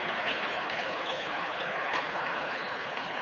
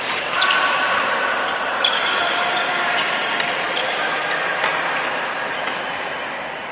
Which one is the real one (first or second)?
second